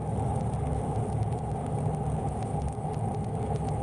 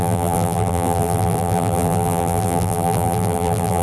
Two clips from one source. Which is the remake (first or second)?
second